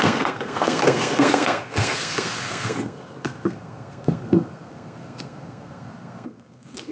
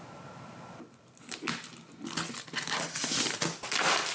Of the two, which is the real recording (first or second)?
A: second